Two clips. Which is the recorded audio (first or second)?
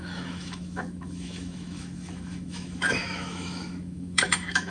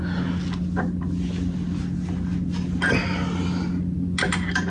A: second